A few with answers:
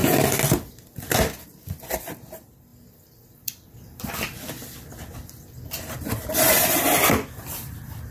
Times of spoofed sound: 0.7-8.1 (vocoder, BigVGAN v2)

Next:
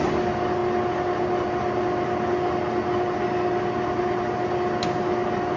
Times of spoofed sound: none

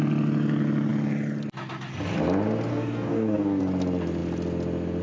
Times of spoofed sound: 2.7-3.6 (codec, DAC)

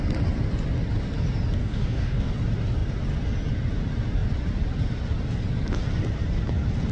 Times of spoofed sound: 1.6-2.3 (codec, DAC)